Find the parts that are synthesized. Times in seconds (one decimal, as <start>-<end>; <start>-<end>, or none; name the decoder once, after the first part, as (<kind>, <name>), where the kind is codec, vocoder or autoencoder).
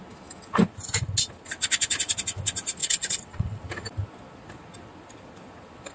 2.8-3.6 (vocoder, WaveNeXt)